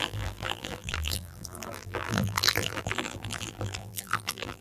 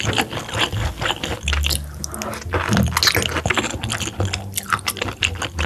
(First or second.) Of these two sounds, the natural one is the second